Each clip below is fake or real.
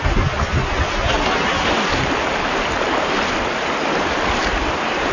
real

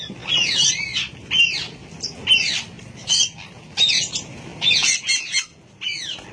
real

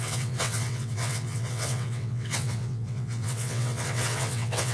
fake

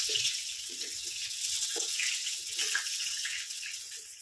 fake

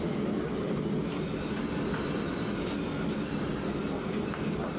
real